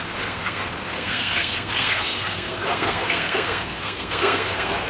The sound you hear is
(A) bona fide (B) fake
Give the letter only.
B